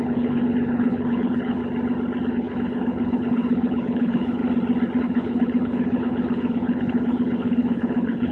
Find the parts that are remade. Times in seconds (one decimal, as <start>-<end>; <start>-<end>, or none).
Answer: 0.0-1.6; 2.3-4.4; 5.0-8.3